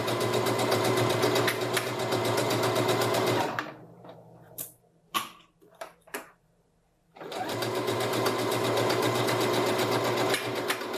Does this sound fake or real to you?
fake